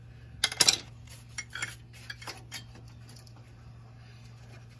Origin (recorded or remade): recorded